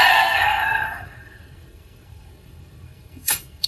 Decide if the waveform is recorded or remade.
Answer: remade